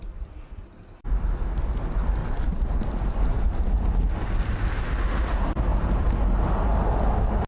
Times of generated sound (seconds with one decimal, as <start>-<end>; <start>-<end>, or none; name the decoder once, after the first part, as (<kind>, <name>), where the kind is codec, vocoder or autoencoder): 2.2-3.4 (vocoder, BigVGAN v2)